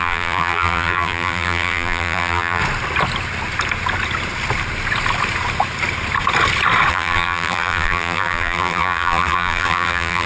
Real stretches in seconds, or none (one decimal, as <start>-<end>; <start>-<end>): 2.6-6.9